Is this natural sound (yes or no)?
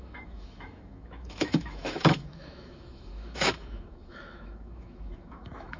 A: no